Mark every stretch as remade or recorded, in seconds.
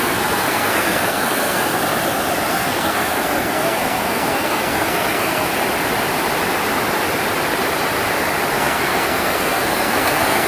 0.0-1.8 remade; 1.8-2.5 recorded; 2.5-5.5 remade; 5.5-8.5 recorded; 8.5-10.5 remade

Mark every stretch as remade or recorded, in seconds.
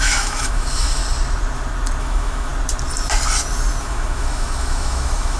0.0-1.0 remade; 1.0-2.0 recorded; 2.0-2.5 remade; 2.5-3.8 recorded; 3.8-5.4 remade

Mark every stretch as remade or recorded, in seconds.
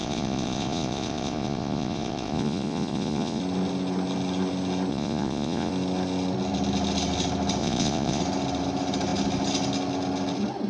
0.0-3.4 remade; 3.4-4.9 recorded; 4.9-5.7 remade; 5.7-7.6 recorded; 7.6-8.2 remade; 8.2-10.7 recorded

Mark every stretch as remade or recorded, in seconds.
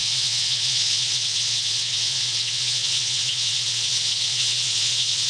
0.0-5.3 remade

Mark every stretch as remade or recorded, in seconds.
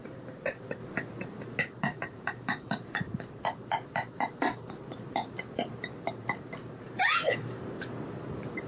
0.0-8.7 remade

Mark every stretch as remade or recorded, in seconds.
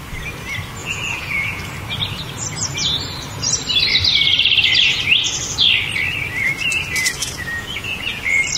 0.0-0.8 recorded; 0.8-1.6 remade; 1.6-7.2 recorded; 7.2-8.2 remade; 8.2-8.6 recorded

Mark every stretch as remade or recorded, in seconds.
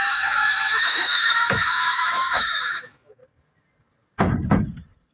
0.0-3.2 remade; 3.2-5.1 recorded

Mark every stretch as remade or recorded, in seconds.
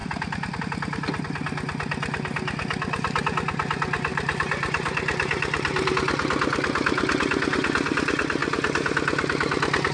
0.0-0.6 remade; 0.6-4.1 recorded; 4.1-5.9 remade; 5.9-9.9 recorded